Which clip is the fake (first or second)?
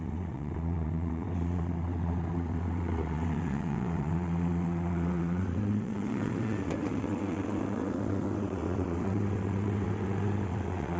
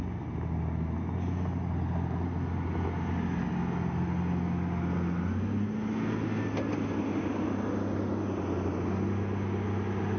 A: first